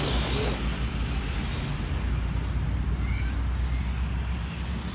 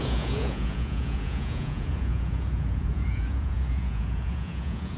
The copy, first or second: second